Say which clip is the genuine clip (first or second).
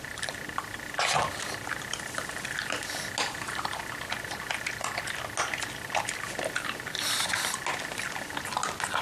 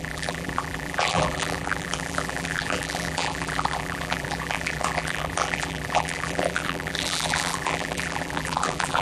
first